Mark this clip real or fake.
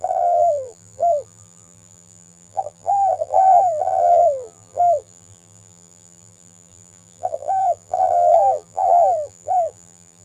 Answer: fake